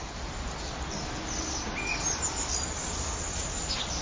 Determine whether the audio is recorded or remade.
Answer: recorded